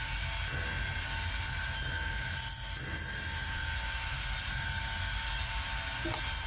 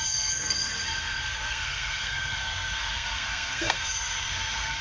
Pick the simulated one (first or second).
second